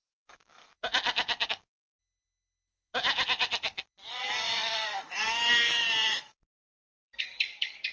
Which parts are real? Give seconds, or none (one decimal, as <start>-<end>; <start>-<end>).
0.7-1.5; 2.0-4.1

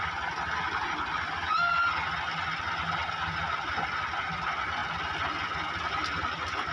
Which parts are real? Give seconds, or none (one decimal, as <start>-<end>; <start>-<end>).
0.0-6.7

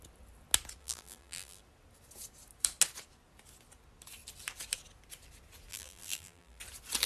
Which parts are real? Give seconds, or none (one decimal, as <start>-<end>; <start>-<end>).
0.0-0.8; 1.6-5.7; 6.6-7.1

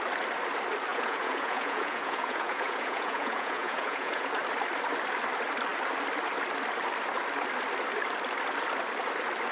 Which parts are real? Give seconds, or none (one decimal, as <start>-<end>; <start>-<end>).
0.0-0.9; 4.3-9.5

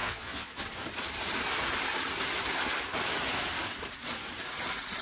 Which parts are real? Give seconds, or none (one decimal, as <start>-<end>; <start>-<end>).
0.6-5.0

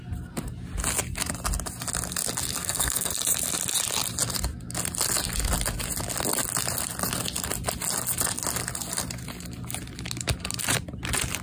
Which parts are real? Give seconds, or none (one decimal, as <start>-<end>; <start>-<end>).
0.0-2.6; 3.1-11.4

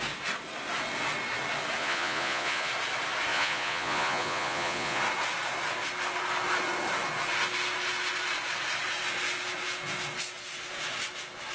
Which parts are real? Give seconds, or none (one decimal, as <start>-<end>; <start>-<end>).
0.0-1.8; 2.7-3.3; 5.0-11.5